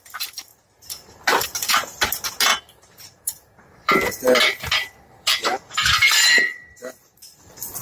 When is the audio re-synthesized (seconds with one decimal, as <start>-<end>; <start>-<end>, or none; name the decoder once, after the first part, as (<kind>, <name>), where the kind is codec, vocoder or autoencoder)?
2.5-7.1 (vocoder, BigVGAN v2)